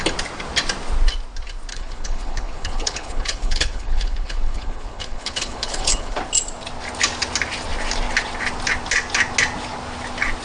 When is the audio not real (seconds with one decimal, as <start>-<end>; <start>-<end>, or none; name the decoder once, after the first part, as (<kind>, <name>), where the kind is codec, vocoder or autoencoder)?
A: 1.7-6.2 (codec, HILCodec)